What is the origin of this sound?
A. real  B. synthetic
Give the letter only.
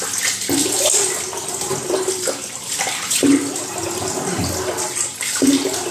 A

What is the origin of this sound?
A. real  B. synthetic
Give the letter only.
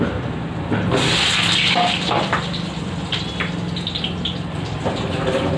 A